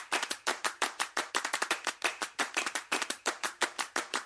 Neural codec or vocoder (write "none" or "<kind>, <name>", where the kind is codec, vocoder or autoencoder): vocoder, BigVGAN v2